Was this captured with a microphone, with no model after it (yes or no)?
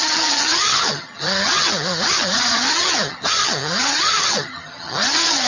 no